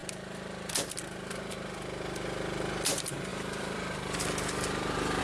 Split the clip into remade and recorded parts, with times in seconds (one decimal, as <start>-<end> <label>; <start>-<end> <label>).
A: 0.0-3.3 recorded; 3.3-5.2 remade